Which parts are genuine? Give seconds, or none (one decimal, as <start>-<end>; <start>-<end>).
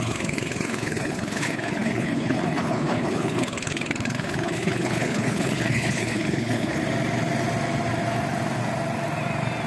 6.8-9.7